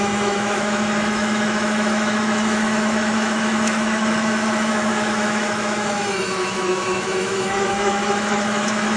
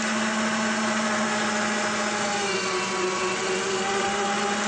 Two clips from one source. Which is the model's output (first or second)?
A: first